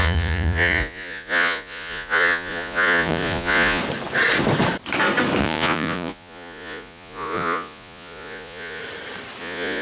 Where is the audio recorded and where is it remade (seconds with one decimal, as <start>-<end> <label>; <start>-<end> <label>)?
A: 0.0-3.8 remade; 3.8-5.4 recorded; 5.4-8.8 remade; 8.8-9.4 recorded; 9.4-9.8 remade